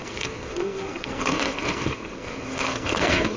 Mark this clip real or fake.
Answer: fake